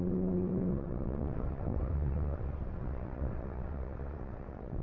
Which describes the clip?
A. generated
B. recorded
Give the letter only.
A